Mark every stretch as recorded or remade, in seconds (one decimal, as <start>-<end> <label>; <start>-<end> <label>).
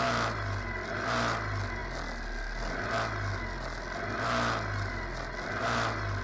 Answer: 0.0-6.2 recorded